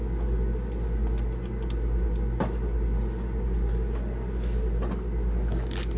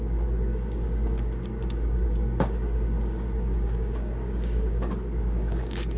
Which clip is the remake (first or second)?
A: second